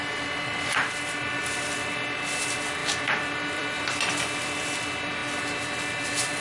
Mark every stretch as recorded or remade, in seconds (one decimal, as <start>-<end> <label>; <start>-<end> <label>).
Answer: 0.0-2.8 recorded; 2.8-3.8 remade; 3.8-6.4 recorded